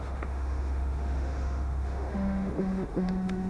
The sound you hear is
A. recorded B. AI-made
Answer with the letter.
B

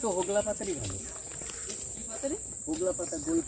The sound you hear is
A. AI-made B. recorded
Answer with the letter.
B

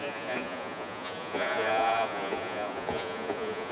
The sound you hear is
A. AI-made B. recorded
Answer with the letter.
A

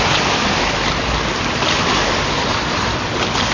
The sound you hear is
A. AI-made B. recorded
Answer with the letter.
B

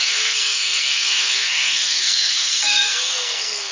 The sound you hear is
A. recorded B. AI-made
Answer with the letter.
B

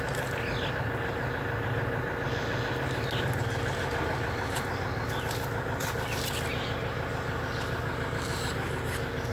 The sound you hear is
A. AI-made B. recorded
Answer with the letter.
B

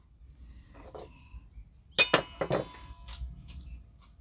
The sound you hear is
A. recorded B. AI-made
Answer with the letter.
A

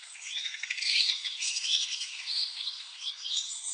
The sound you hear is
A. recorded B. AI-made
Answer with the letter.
B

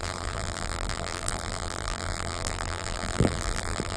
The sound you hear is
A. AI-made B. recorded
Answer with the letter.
A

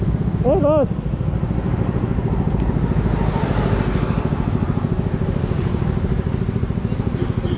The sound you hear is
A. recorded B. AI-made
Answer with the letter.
A